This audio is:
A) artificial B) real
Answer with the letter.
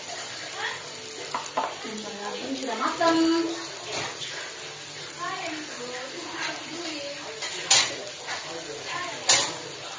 B